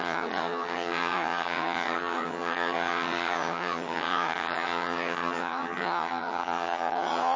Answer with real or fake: fake